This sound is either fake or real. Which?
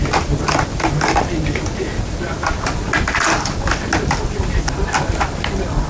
real